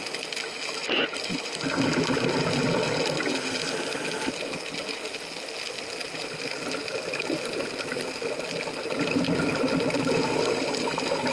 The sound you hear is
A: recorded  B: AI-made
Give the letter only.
A